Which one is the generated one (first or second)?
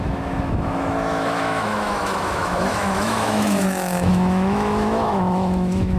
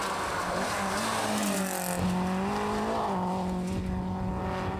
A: first